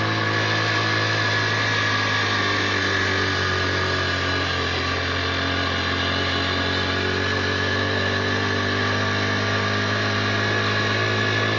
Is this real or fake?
real